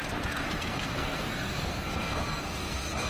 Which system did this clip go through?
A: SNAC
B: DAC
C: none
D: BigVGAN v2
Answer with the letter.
A